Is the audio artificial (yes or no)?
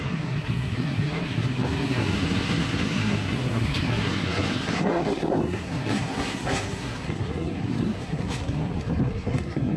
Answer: yes